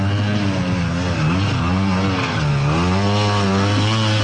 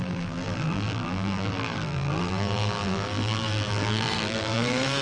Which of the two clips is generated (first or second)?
second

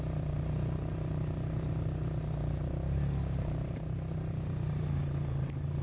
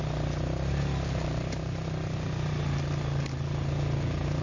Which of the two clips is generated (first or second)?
first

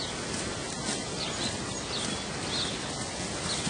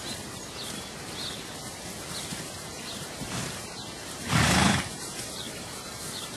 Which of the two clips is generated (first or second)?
second